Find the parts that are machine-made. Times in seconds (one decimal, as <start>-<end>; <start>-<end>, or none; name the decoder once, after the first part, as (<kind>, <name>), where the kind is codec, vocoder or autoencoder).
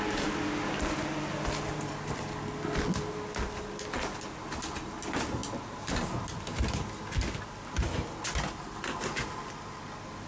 none